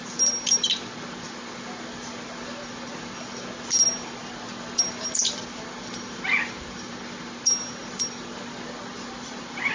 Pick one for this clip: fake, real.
real